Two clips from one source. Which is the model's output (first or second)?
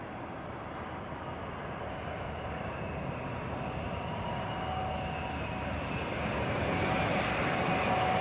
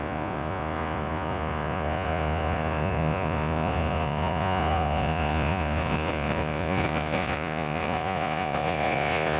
second